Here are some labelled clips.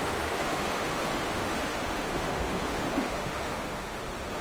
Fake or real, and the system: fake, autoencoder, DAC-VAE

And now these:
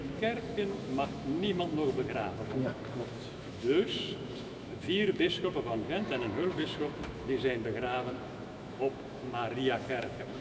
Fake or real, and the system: fake, autoencoder, DAC-VAE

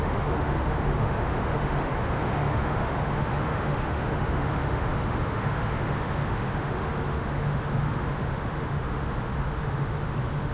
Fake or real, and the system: fake, autoencoder, DAC-VAE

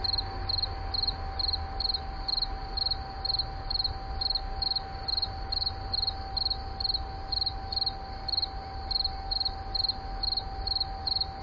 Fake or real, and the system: real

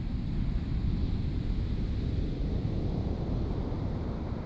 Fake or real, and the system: real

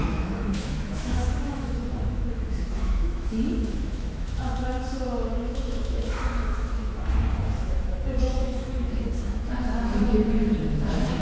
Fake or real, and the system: fake, autoencoder, DAC-VAE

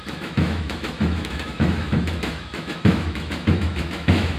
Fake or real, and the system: fake, autoencoder, DAC-VAE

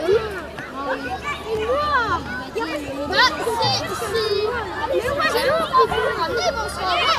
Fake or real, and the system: real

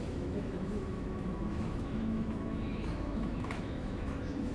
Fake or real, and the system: fake, autoencoder, DAC-VAE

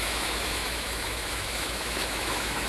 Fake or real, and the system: fake, autoencoder, DAC-VAE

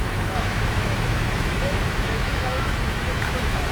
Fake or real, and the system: fake, autoencoder, DAC-VAE